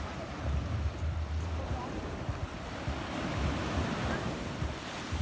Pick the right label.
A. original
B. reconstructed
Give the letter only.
A